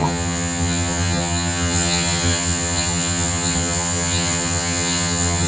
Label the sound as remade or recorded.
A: remade